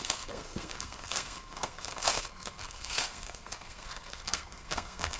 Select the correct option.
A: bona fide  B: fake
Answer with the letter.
B